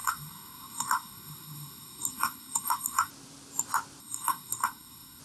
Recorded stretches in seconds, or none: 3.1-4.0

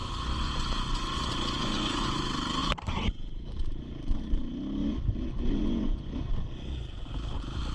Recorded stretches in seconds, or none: 2.2-4.8; 6.3-7.7

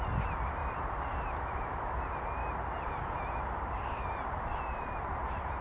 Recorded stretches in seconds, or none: 0.0-0.6; 1.8-2.4

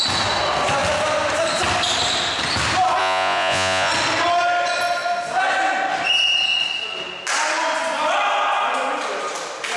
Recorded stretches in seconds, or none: 0.0-3.0; 3.9-9.8